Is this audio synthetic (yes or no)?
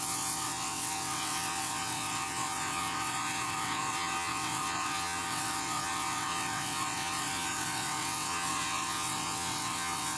yes